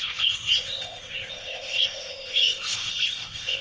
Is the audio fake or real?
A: fake